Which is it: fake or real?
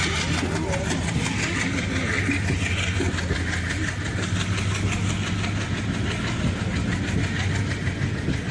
real